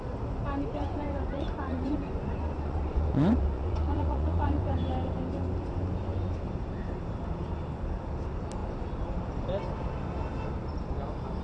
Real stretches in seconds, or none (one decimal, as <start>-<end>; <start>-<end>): 0.0-0.8; 4.7-11.4